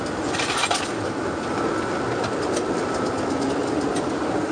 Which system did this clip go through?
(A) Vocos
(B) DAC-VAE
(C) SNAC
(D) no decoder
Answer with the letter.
D